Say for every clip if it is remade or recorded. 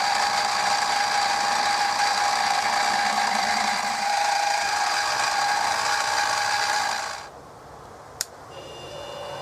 remade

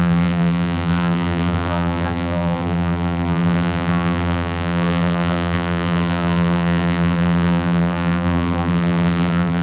remade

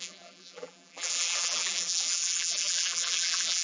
remade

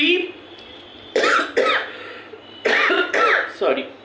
remade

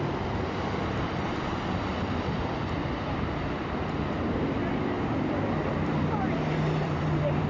remade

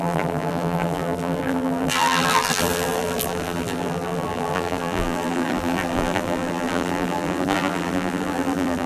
remade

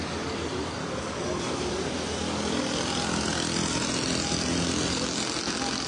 recorded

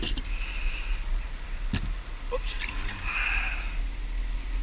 recorded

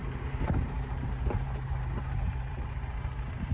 remade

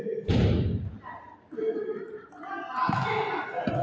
recorded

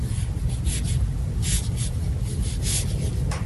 recorded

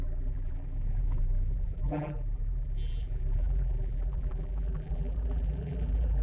remade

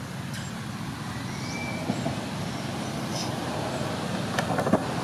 recorded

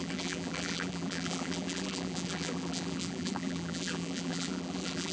remade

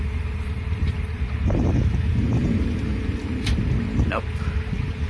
remade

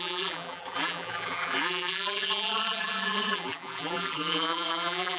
remade